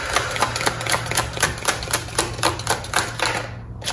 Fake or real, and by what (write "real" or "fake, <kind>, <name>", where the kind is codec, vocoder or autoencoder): real